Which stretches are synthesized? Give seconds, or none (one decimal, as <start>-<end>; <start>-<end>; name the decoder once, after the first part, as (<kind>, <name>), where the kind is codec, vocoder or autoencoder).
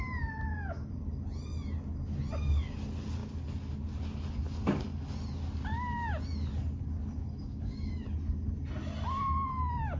7.4-7.9 (codec, DAC)